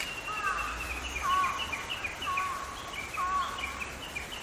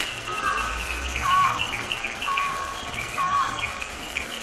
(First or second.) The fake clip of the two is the second